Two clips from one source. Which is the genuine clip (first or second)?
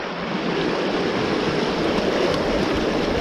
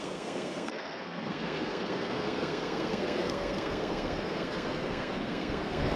first